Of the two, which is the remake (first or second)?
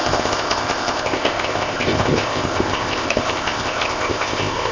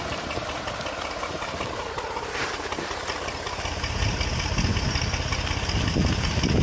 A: first